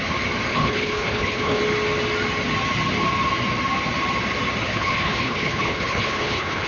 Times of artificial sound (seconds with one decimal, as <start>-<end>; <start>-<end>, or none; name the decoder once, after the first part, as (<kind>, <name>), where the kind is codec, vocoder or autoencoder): 0.5-1.6 (codec, HILCodec); 4.7-6.7